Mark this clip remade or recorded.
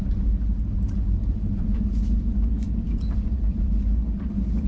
recorded